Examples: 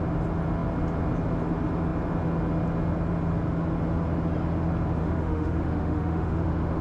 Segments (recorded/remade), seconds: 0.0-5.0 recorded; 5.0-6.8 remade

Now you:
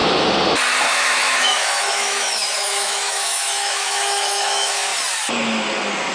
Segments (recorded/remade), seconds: 0.0-0.8 recorded; 0.8-4.9 remade; 4.9-6.1 recorded

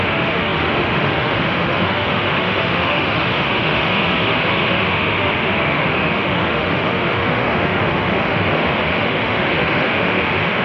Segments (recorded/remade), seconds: 0.0-10.6 remade

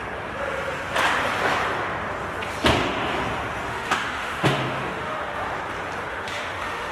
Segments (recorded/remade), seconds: 0.0-3.7 recorded; 3.7-5.3 remade; 5.3-6.1 recorded; 6.1-6.9 remade

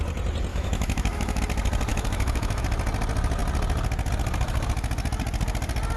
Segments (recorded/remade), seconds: 0.0-0.5 recorded; 0.5-1.4 remade; 1.4-1.9 recorded; 1.9-2.6 remade; 2.6-6.0 recorded

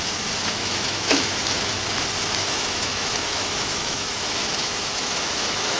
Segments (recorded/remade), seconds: 0.0-0.6 recorded; 0.6-1.7 remade; 1.7-2.3 recorded; 2.3-5.8 remade

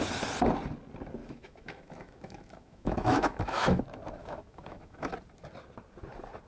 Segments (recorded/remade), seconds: 0.0-1.2 recorded; 1.2-3.8 remade; 3.8-4.2 recorded; 4.2-5.1 remade; 5.1-6.5 recorded